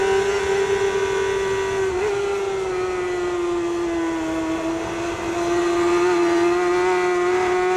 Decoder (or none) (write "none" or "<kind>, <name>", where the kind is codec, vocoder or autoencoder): none